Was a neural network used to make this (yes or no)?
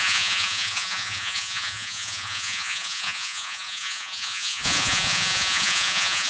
yes